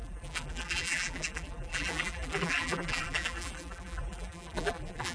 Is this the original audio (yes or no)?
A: no